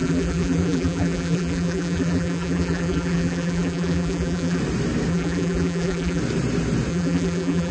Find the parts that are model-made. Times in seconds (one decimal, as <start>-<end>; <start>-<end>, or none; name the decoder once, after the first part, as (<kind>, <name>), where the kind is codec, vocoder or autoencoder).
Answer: 0.0-4.6 (vocoder, BigVGAN v2); 5.1-6.2; 6.9-7.7